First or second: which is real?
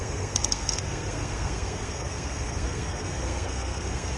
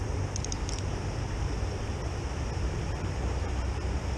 second